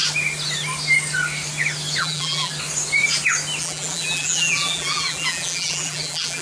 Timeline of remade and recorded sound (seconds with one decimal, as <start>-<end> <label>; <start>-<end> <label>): 0.0-2.0 recorded; 2.0-2.5 remade; 2.5-3.6 recorded; 3.6-6.4 remade